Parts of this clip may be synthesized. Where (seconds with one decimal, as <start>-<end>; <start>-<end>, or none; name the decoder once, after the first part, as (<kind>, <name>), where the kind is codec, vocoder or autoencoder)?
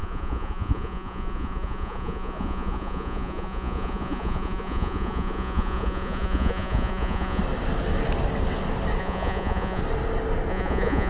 0.0-7.4 (vocoder, Vocos); 9.0-9.8; 10.5-11.1